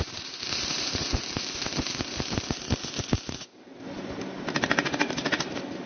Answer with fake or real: real